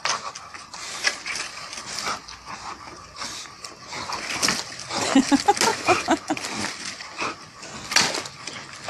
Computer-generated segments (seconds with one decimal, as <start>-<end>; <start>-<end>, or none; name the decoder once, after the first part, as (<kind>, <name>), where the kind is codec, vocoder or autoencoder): 5.7-6.3 (autoencoder, DAC-VAE)